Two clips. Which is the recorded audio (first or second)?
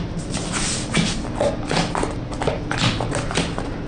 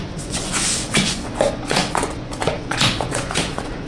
first